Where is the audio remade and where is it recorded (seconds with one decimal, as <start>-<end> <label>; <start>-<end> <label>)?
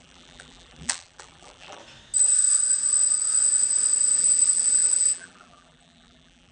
0.0-1.8 remade; 1.8-4.2 recorded; 4.2-6.5 remade